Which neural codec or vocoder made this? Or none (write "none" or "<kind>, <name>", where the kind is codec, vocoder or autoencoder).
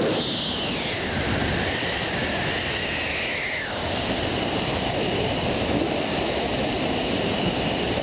none